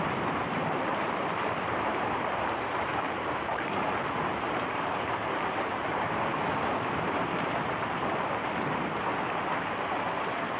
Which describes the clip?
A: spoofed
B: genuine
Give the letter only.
A